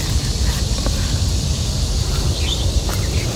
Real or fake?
real